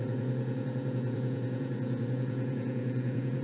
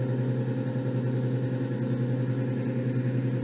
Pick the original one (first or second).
second